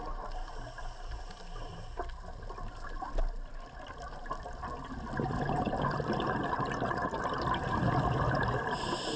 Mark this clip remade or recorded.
recorded